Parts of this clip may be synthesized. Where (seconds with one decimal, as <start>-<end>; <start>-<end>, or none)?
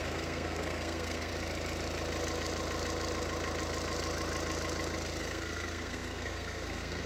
0.0-1.3; 5.2-7.1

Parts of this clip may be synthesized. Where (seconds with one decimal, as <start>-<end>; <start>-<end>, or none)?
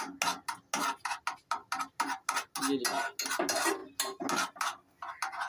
none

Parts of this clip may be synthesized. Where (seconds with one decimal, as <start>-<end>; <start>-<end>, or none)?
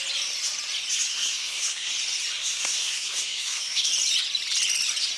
1.1-1.9; 2.4-3.9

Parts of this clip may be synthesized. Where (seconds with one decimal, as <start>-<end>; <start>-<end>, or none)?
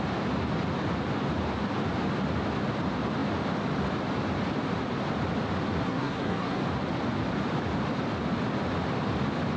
5.8-6.6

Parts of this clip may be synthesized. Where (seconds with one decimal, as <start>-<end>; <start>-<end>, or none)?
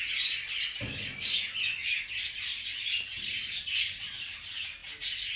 none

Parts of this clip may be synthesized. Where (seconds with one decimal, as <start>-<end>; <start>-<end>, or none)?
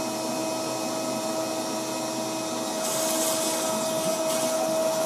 none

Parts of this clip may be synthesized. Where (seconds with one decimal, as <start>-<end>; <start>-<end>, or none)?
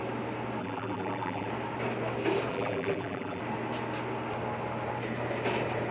0.6-1.5; 2.5-3.4